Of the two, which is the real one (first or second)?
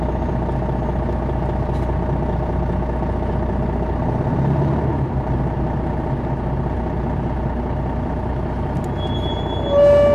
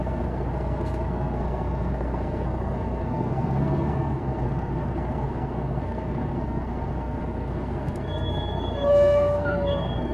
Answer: first